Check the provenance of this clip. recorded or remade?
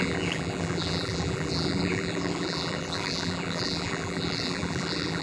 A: remade